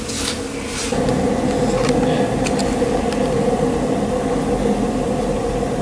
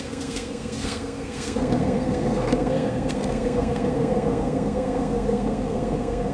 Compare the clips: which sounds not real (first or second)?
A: second